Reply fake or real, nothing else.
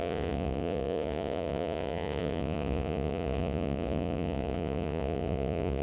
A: fake